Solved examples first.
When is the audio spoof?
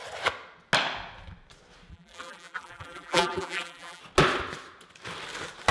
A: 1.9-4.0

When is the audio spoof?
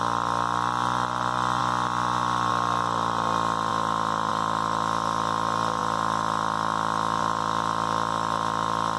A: 0.0-1.6; 2.5-3.7; 4.3-5.8; 7.2-9.0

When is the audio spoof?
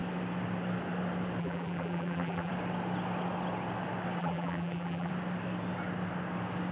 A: 1.4-2.5; 4.2-5.1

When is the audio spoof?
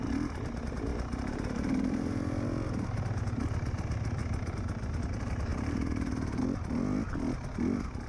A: 0.9-3.0; 4.2-5.0; 5.5-6.4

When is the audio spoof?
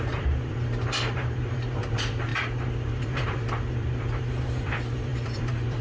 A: 0.0-5.8